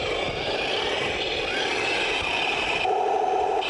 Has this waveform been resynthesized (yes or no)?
no